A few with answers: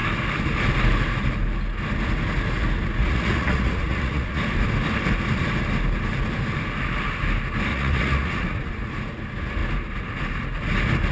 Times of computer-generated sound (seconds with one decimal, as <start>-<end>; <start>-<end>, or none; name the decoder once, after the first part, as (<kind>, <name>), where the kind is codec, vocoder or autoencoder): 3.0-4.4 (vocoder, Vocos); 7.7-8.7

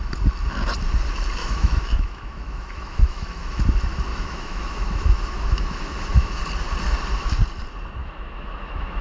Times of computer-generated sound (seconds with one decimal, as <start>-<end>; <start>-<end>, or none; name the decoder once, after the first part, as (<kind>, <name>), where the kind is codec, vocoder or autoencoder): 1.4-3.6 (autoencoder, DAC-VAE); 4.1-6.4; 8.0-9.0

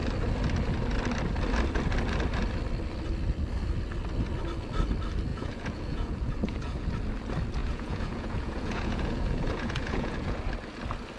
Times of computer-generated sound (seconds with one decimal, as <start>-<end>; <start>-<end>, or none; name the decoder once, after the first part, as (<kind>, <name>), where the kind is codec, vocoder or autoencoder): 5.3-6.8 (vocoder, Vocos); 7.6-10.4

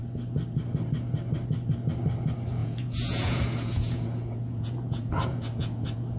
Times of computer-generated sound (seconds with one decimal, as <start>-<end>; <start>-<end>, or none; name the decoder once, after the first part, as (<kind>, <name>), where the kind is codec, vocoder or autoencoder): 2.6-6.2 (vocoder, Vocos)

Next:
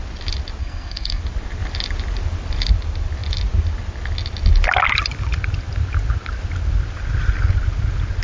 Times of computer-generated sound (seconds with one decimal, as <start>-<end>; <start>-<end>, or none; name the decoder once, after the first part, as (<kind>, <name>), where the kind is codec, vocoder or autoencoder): 0.6-1.2 (codec, SNAC)

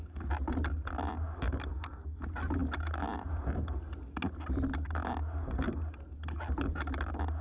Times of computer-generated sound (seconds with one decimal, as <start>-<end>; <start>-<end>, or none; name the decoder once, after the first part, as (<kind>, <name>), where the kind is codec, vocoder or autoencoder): 1.7-2.2 (codec, SNAC)

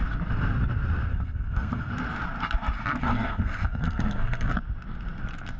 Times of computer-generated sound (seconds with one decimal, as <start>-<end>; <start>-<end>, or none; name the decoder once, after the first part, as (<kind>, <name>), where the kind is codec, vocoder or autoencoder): 1.1-1.9 (codec, SNAC); 3.0-4.5

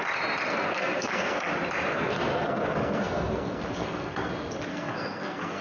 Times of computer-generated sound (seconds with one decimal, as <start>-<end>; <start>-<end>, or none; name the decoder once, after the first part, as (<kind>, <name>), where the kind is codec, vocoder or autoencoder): 0.5-1.5 (codec, SNAC); 1.9-4.3; 4.7-5.6